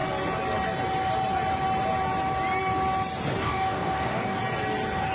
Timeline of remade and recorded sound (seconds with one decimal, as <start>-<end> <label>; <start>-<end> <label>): 0.0-3.4 recorded; 3.4-4.4 remade; 4.4-5.1 recorded